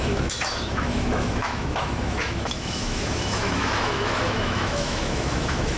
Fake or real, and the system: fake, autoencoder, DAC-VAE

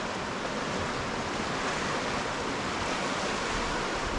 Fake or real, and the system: real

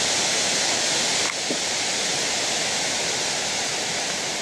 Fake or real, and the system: real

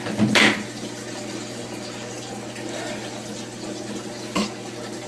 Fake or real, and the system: real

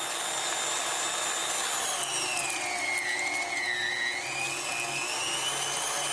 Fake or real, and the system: real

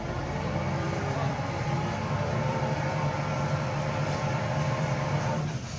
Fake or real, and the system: fake, vocoder, BigVGAN v2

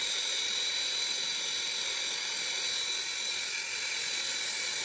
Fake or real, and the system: real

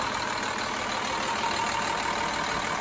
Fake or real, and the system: real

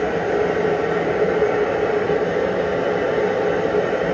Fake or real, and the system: real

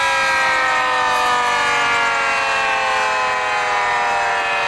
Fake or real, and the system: real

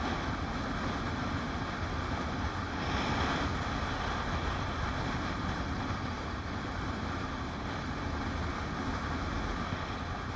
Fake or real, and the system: real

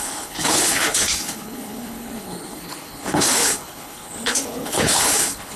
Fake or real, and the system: fake, codec, HILCodec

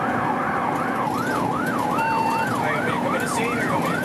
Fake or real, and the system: fake, vocoder, BigVGAN v2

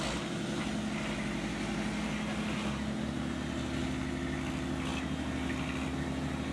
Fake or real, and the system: real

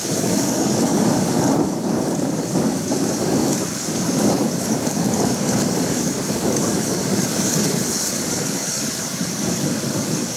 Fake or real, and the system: fake, codec, DAC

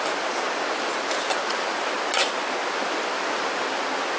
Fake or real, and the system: real